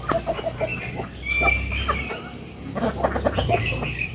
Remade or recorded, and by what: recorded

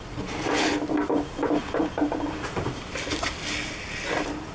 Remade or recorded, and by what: recorded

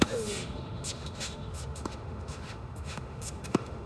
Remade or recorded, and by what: remade, autoencoder, DAC-VAE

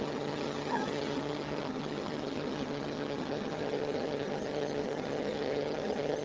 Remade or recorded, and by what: remade, vocoder, HiFi-GAN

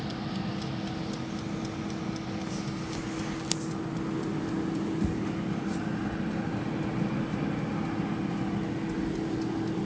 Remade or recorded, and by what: recorded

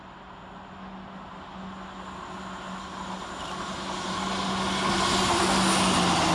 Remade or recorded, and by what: recorded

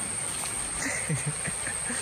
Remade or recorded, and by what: recorded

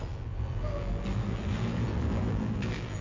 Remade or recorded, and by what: remade, vocoder, BigVGAN v2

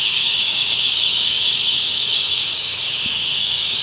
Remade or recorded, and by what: remade, codec, DAC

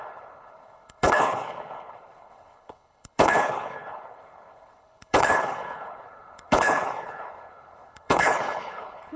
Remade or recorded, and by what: remade, codec, HILCodec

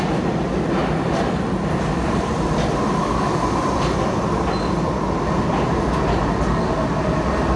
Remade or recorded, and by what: recorded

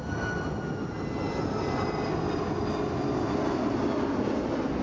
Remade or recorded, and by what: recorded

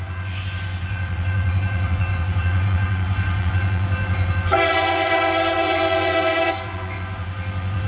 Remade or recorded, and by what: remade, vocoder, Vocos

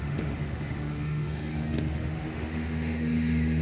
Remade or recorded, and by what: remade, autoencoder, DAC-VAE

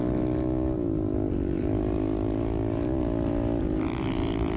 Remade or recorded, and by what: recorded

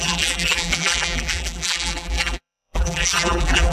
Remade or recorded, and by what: remade, vocoder, BigVGAN v2